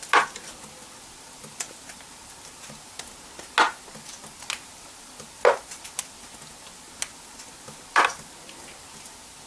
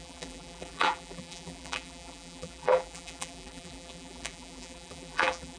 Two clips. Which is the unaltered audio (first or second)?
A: first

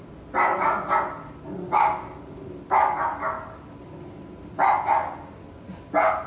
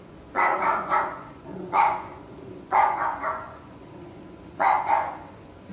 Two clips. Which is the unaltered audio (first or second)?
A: first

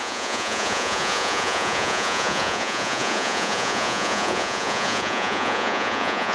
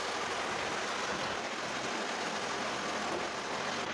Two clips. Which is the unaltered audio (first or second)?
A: second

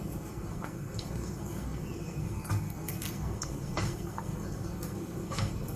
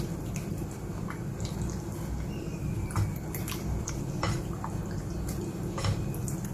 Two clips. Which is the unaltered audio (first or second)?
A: second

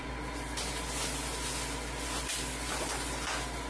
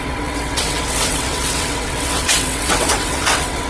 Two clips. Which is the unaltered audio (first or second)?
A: first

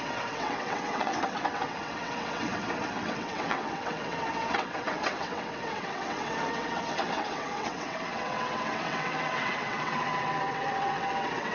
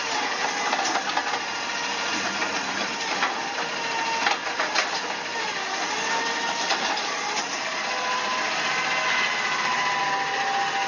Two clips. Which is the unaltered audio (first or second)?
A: second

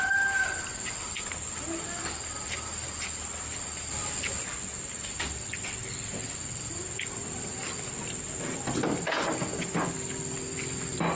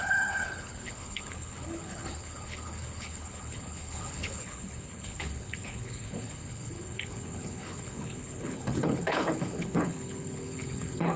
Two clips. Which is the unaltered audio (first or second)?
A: first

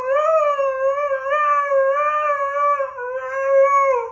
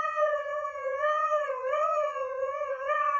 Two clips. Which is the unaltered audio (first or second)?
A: first